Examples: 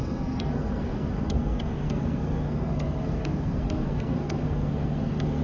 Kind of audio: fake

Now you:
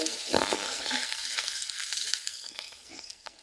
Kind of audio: fake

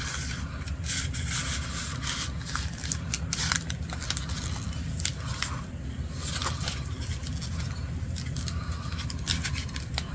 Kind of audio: real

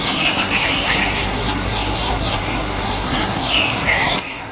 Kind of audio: fake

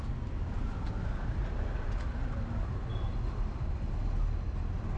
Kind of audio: real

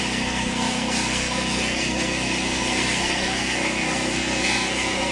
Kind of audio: fake